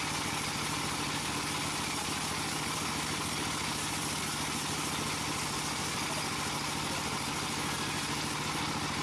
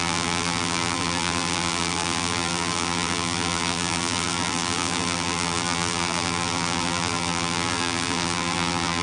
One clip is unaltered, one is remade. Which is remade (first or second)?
second